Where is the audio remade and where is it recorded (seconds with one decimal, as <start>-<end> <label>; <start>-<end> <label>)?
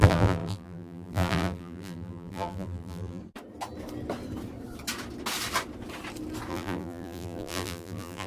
0.0-3.2 remade; 3.2-6.5 recorded; 6.5-8.3 remade